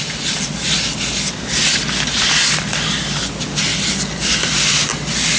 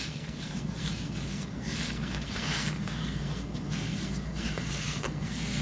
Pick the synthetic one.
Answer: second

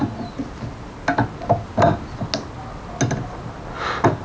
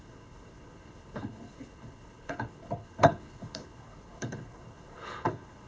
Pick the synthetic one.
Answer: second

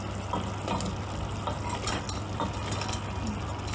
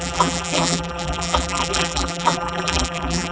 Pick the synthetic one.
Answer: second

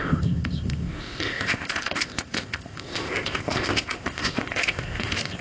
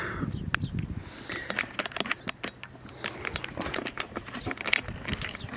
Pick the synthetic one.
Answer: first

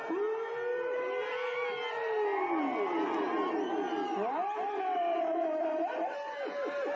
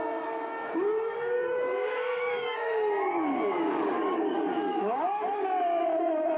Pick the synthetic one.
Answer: second